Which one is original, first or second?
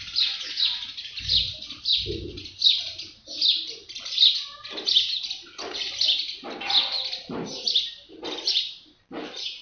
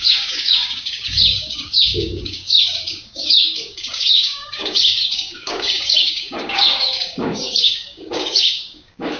first